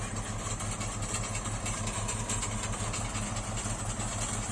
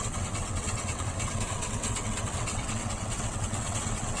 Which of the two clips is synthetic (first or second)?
second